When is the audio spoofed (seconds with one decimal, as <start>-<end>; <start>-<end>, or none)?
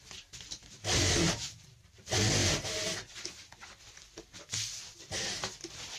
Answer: 0.0-2.4; 3.8-6.0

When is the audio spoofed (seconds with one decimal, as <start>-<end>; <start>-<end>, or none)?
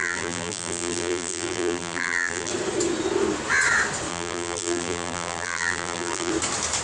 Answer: 0.0-2.5; 4.1-6.3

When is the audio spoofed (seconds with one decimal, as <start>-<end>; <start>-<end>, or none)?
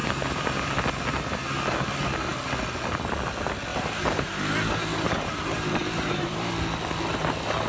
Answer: 0.0-0.7; 3.7-6.5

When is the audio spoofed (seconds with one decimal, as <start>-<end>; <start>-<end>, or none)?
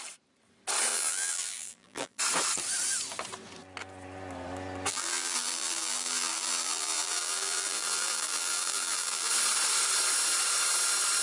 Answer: 0.9-2.2; 4.9-9.3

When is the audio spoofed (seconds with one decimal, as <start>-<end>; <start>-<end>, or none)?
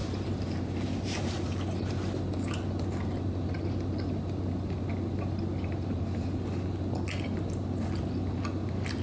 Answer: 0.0-1.3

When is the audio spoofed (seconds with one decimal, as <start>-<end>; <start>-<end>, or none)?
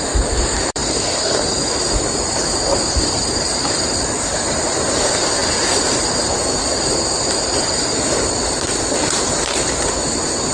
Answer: 0.0-10.5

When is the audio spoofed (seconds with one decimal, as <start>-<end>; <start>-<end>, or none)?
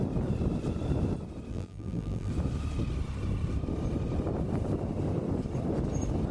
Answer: 1.5-2.3